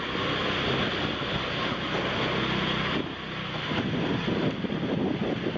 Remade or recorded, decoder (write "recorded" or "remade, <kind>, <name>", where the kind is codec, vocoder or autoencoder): recorded